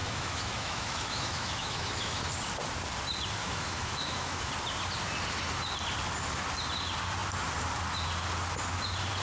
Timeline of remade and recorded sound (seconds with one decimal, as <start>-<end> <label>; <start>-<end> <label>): 0.0-2.2 remade; 2.2-3.4 recorded; 3.4-4.5 remade; 4.5-9.2 recorded